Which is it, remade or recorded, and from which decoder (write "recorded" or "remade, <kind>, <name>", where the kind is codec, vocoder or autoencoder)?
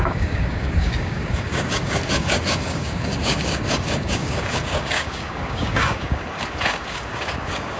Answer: remade, codec, DAC